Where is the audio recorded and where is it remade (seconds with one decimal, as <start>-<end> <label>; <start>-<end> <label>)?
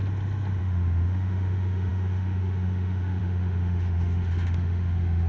0.0-0.6 recorded; 0.6-5.3 remade